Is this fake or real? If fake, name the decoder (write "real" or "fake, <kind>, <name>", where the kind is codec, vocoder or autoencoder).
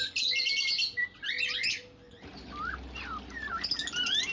real